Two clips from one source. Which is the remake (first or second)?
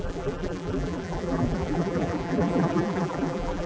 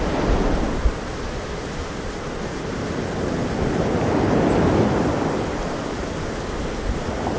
first